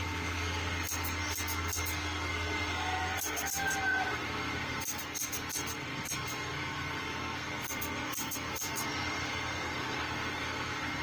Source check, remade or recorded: remade